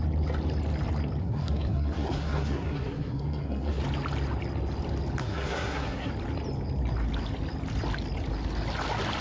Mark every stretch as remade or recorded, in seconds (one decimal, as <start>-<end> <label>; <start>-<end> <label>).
0.0-1.2 recorded; 1.2-3.8 remade; 3.8-5.2 recorded; 5.2-6.1 remade; 6.1-9.2 recorded